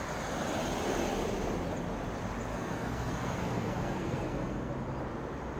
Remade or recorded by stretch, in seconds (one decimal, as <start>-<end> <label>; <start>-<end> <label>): 0.0-2.5 recorded; 2.5-4.7 remade; 4.7-5.6 recorded